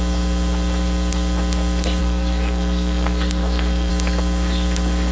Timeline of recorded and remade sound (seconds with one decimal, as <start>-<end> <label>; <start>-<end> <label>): 0.0-2.0 recorded; 2.0-3.9 remade; 3.9-5.1 recorded